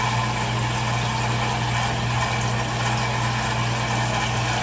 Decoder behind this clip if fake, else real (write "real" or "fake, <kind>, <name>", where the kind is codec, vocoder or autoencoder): real